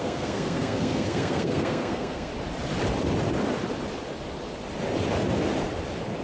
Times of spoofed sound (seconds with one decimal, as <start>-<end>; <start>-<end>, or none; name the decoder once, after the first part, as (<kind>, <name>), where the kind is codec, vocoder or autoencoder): 0.0-2.3 (codec, SNAC)

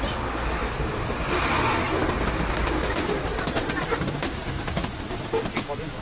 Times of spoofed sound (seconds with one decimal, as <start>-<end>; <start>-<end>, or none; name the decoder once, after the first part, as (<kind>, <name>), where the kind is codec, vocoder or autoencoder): 0.6-1.3 (vocoder, BigVGAN v2); 3.3-5.2

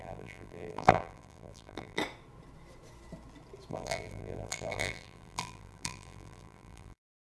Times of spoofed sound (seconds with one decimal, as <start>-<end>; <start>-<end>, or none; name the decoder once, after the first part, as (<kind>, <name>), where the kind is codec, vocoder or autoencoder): 0.0-2.0 (vocoder, BigVGAN v2); 3.7-7.4

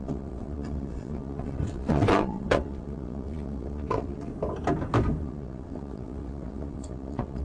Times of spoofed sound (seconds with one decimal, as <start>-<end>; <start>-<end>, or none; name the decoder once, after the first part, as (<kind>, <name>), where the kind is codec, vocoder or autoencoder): 0.0-4.3 (vocoder, WaveNeXt); 5.2-7.4